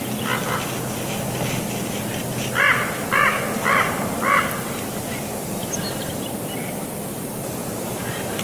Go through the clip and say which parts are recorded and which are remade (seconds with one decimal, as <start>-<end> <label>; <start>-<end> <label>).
0.0-7.6 recorded; 7.6-8.4 remade